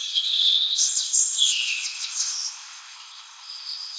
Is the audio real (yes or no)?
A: no